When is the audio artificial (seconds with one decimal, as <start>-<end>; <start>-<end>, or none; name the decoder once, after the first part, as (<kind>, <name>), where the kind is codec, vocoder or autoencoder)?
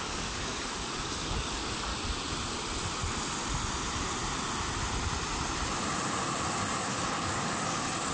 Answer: 0.0-1.9 (codec, DAC); 6.8-8.1